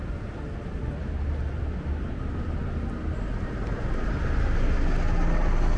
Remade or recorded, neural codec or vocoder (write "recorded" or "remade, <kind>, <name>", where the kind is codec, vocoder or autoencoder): recorded